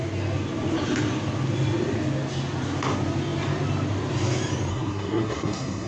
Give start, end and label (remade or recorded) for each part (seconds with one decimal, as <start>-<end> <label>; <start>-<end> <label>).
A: 0.0-4.7 recorded; 4.7-5.9 remade